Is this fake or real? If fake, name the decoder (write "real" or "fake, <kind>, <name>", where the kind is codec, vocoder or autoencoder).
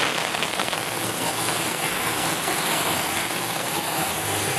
fake, codec, SNAC